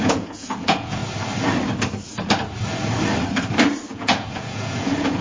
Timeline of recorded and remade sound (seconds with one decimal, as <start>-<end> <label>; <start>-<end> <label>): 0.0-1.0 remade; 1.0-3.9 recorded; 3.9-5.2 remade